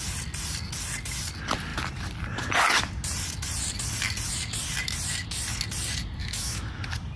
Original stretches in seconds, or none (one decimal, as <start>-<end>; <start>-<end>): 0.0-6.2; 6.8-7.2